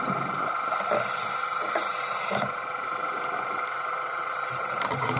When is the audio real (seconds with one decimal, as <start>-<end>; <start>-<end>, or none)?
0.0-1.8